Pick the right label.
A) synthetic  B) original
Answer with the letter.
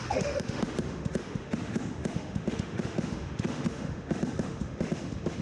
A